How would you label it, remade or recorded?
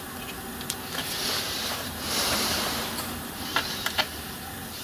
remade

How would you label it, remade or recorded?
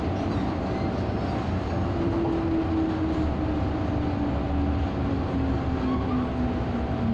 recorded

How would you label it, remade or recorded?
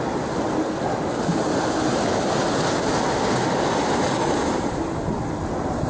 recorded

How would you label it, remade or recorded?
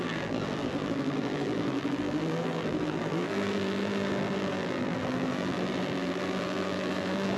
remade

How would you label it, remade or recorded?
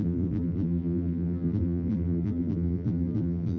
remade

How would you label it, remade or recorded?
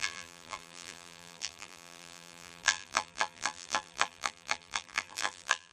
remade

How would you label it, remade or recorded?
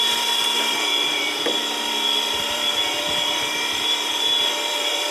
remade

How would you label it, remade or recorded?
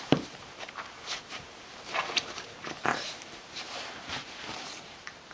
remade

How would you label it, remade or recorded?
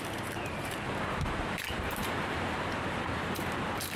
remade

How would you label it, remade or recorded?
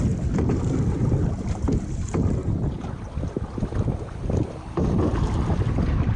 remade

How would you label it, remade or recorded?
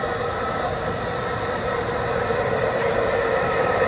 remade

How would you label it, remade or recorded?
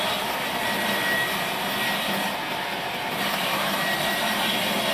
recorded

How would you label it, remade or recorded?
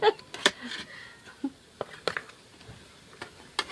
recorded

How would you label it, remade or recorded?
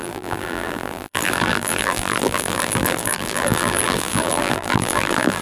remade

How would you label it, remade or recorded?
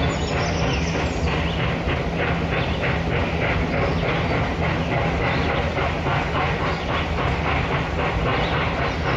recorded